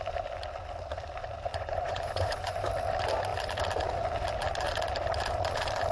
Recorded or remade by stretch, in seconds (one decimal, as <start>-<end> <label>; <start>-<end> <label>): 0.0-1.5 recorded; 1.5-2.7 remade; 2.7-5.9 recorded